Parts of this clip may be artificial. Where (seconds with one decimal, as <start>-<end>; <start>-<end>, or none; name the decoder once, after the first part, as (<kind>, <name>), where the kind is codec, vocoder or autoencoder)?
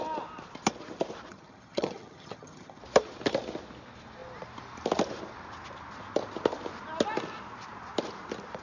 1.3-2.8 (vocoder, HiFi-GAN)